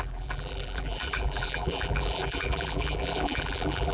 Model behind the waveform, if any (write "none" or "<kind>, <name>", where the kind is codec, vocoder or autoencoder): vocoder, BigVGAN v2